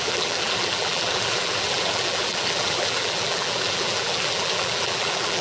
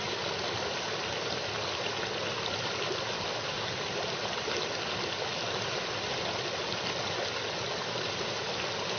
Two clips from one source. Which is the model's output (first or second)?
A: first